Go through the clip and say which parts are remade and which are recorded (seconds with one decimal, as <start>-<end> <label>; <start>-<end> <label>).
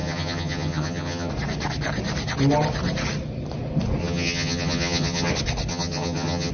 0.0-1.3 remade; 1.3-4.0 recorded; 4.0-5.3 remade; 5.3-5.7 recorded; 5.7-6.5 remade